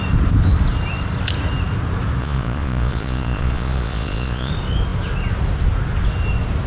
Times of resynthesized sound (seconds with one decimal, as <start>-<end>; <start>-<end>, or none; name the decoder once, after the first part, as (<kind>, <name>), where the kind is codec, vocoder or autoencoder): 2.2-4.5 (vocoder, Vocos)